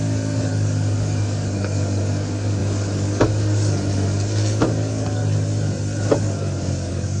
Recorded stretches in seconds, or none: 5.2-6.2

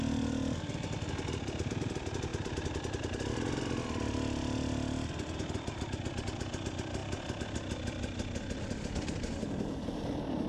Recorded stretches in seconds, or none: 0.0-10.5

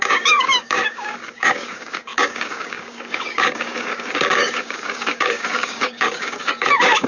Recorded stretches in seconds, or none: none

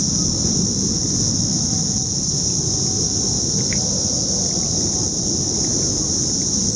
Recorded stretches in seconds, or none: 0.0-6.8